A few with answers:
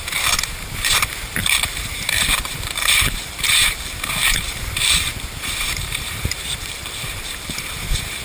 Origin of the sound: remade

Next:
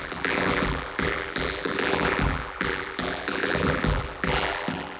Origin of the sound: remade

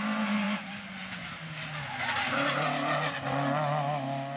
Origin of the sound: recorded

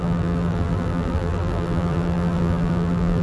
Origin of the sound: remade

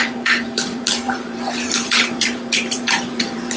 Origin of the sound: remade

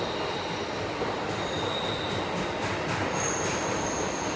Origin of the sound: recorded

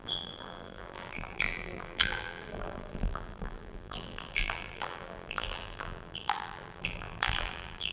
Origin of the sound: remade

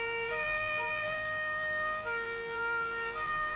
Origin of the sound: remade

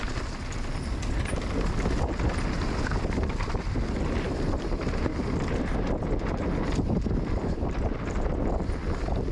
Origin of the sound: recorded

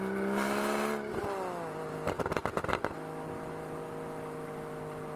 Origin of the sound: recorded